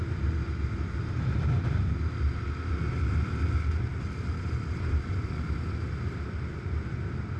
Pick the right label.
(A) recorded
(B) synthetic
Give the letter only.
A